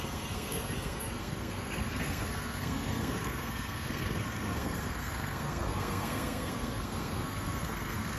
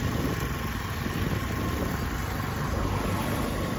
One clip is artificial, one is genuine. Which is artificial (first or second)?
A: first